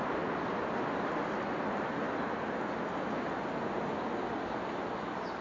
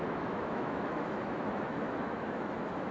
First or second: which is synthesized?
second